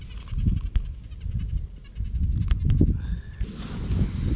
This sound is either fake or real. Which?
real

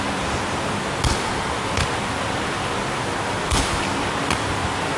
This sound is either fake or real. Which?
real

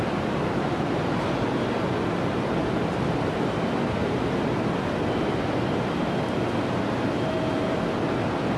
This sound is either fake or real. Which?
real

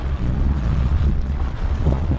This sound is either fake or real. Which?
fake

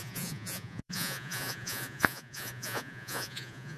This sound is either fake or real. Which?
fake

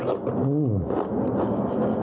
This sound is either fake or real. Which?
real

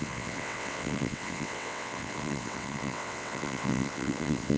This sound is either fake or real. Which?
fake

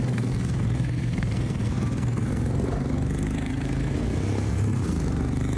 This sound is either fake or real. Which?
fake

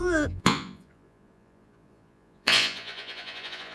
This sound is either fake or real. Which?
fake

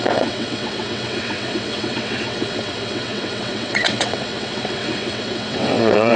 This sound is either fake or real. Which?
fake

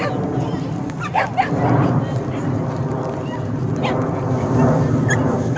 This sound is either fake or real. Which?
real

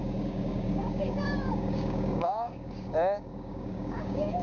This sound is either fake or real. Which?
fake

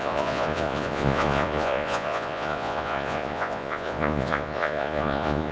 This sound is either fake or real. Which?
fake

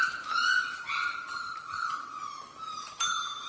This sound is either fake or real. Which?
real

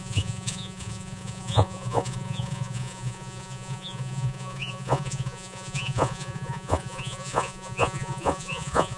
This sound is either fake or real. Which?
fake